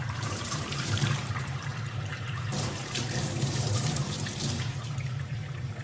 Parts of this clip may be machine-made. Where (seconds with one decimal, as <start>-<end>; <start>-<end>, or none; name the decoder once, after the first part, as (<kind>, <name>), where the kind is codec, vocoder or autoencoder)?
0.0-5.8 (vocoder, BigVGAN v2)